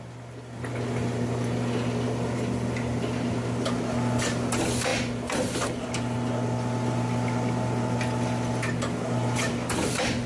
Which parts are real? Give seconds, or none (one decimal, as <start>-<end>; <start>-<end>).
0.0-10.3